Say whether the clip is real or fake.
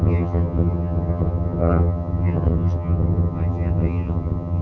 fake